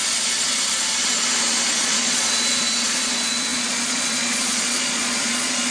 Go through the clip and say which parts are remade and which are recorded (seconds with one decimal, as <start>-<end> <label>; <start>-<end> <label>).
0.0-1.8 recorded; 1.8-5.7 remade